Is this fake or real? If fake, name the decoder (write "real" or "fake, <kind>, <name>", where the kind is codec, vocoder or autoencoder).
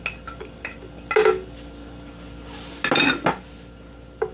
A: real